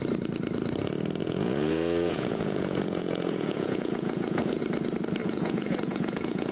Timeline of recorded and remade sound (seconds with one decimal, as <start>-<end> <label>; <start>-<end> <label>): 0.0-1.2 recorded; 1.2-4.6 remade; 4.6-5.2 recorded; 5.2-6.5 remade